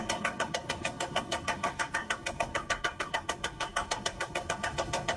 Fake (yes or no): yes